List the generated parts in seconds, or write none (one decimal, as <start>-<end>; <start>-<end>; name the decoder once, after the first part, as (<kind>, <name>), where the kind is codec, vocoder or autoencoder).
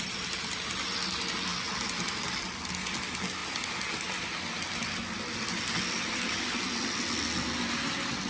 none